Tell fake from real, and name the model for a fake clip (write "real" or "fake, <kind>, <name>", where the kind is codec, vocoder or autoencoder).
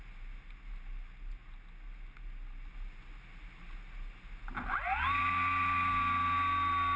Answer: real